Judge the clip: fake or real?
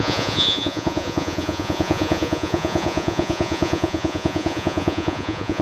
fake